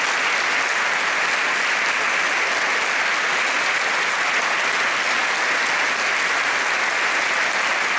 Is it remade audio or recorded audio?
recorded